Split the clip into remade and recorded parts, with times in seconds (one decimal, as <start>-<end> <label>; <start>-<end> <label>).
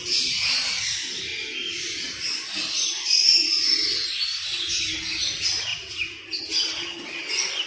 0.0-7.7 recorded